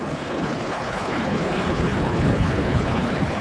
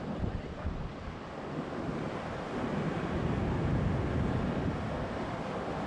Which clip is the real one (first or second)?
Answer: second